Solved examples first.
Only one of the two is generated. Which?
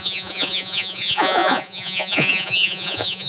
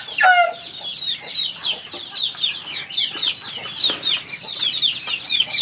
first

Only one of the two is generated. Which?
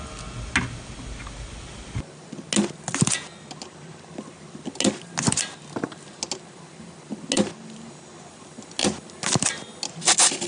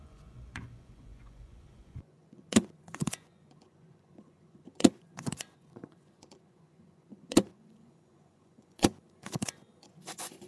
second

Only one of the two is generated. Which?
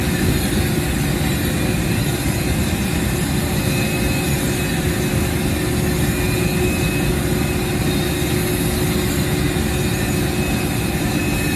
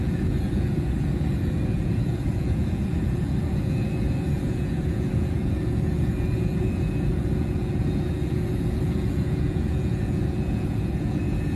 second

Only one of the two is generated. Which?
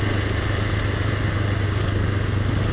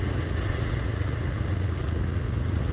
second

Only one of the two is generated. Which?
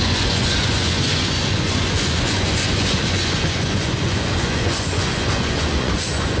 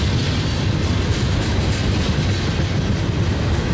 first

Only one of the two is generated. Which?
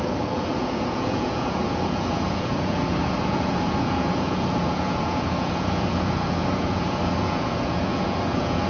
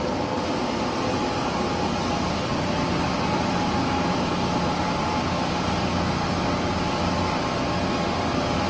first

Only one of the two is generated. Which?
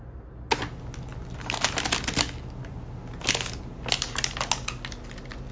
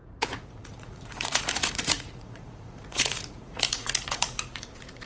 second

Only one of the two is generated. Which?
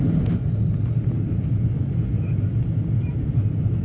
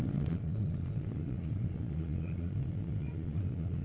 second